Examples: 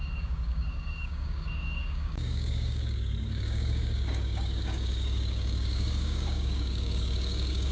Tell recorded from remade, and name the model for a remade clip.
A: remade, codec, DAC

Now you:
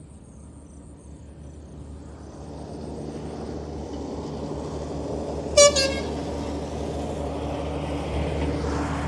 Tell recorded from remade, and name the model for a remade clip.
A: recorded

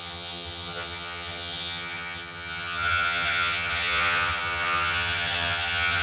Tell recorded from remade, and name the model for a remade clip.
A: remade, vocoder, HiFi-GAN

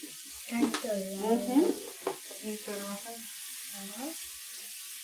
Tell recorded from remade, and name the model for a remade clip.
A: recorded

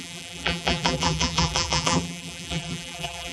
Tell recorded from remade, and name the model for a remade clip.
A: remade, vocoder, BigVGAN v2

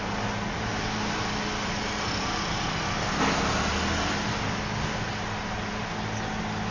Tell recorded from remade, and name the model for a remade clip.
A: recorded